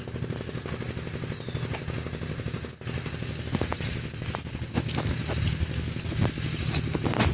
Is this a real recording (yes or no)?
yes